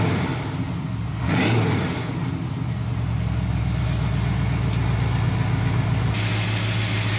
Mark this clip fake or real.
real